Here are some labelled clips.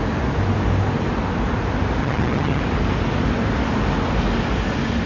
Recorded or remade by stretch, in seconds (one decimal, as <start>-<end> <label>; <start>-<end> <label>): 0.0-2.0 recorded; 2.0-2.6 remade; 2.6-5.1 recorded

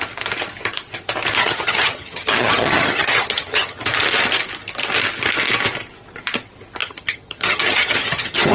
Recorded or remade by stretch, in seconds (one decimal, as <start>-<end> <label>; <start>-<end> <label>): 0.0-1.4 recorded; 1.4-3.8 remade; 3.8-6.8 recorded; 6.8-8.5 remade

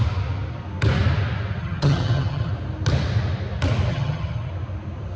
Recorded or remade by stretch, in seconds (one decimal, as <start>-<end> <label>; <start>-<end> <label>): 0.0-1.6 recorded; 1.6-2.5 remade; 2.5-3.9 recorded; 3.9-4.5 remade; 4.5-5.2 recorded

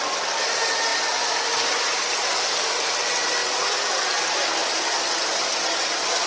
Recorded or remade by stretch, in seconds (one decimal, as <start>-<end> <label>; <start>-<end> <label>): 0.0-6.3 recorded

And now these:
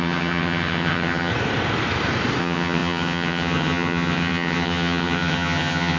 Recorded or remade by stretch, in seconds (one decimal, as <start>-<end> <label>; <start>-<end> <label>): 0.0-1.3 remade; 1.3-2.4 recorded; 2.4-6.0 remade

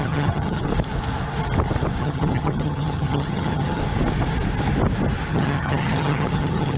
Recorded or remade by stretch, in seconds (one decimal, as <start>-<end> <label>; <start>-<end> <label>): 0.0-0.7 remade; 0.7-2.0 recorded; 2.0-3.8 remade; 3.8-5.3 recorded; 5.3-6.8 remade

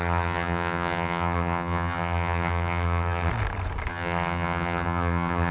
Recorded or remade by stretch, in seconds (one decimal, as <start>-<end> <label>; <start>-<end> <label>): 0.0-3.3 remade; 3.3-3.9 recorded; 3.9-5.5 remade